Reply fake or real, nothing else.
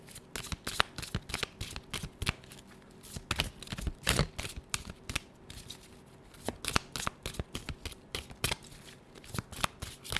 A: real